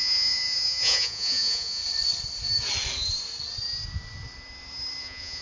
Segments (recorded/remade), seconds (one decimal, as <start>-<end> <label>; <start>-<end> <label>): 0.0-1.8 remade; 1.8-5.0 recorded; 5.0-5.4 remade